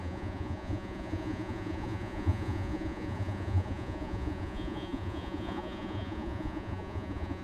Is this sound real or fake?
fake